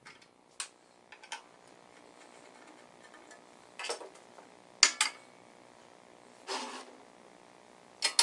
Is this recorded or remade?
recorded